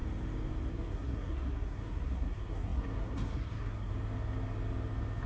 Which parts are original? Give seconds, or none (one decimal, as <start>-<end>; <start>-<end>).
0.0-0.7; 3.9-5.3